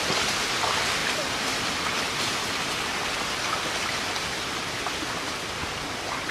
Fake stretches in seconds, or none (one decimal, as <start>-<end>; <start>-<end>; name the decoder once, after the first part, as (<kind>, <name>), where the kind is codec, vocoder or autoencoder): none